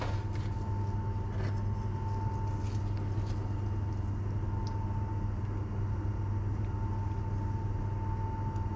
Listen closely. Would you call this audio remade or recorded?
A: recorded